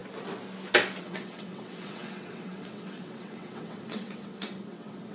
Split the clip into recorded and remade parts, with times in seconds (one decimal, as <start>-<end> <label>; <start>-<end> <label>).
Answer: 0.0-1.0 recorded; 1.0-5.1 remade